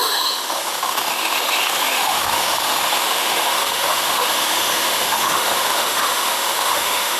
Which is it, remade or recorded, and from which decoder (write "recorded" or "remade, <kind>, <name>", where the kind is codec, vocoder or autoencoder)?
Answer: remade, autoencoder, DAC-VAE